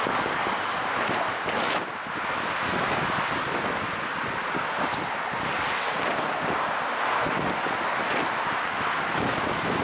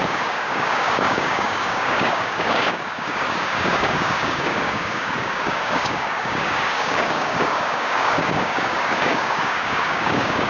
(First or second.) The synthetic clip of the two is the second